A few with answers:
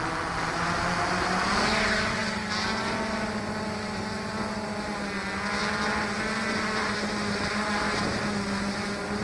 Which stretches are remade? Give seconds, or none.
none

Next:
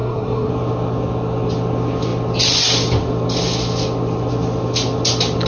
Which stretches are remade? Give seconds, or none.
0.0-0.5 (codec, SNAC)

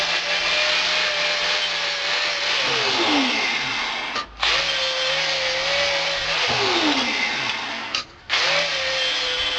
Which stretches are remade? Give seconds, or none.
7.7-8.4 (codec, SNAC)

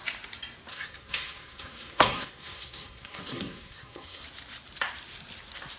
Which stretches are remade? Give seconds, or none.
0.7-4.2 (codec, SNAC)